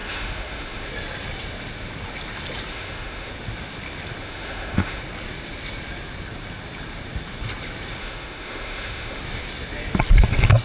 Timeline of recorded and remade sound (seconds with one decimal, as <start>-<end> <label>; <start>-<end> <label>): 0.0-0.9 remade; 0.9-2.7 recorded; 2.7-3.3 remade; 3.3-4.2 recorded; 4.2-5.0 remade; 5.0-8.0 recorded; 8.0-9.2 remade; 9.2-10.6 recorded